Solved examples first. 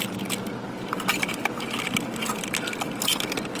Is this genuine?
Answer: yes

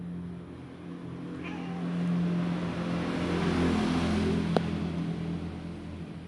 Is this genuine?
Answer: yes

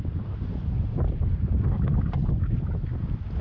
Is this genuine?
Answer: yes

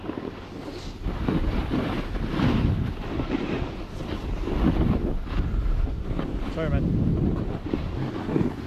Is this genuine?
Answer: yes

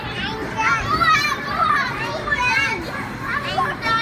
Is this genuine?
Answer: no